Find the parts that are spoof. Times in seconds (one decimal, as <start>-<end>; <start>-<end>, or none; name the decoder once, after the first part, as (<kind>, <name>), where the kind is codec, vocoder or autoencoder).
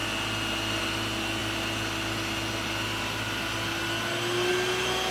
none